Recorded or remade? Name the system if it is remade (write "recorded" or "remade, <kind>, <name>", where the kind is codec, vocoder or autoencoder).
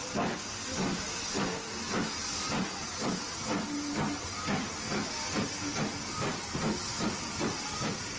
recorded